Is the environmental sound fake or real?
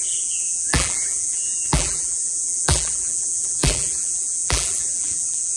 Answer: fake